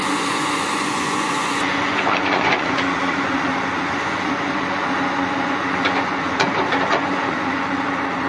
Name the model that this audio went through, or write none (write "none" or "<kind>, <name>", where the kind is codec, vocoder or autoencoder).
vocoder, Vocos